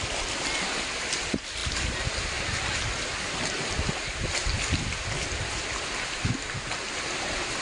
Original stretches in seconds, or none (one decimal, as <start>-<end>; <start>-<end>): 0.0-7.6